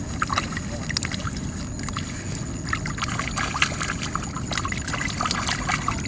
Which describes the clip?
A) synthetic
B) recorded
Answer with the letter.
B